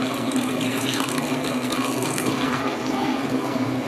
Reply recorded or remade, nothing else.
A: remade